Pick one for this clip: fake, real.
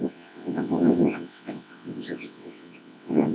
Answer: fake